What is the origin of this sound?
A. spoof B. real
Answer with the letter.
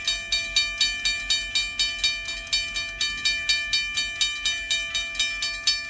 B